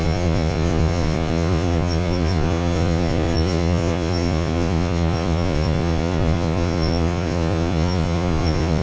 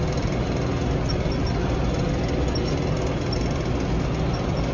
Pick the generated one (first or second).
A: first